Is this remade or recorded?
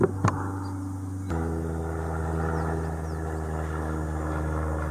recorded